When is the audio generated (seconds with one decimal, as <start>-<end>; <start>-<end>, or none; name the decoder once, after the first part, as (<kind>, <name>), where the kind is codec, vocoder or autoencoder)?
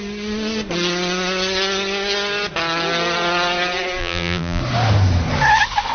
4.0-4.6 (vocoder, BigVGAN v2)